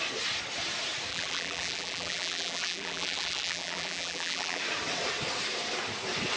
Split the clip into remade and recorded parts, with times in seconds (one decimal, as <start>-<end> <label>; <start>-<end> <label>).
0.0-1.1 recorded; 1.1-4.6 remade; 4.6-6.4 recorded